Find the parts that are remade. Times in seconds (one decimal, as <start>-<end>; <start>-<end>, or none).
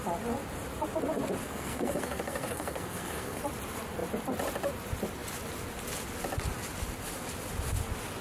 1.4-3.4